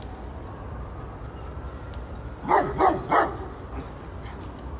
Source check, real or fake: real